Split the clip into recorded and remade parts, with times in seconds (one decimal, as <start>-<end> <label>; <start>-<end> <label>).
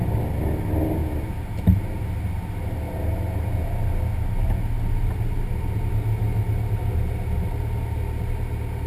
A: 0.0-8.9 recorded